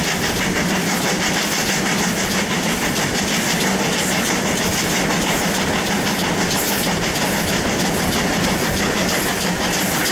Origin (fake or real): fake